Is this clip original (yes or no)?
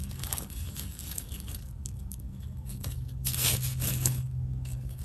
no